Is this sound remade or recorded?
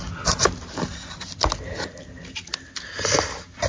recorded